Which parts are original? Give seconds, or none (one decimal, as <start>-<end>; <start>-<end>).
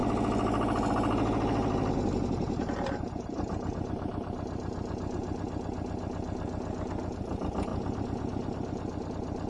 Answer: 0.0-2.4; 4.3-9.5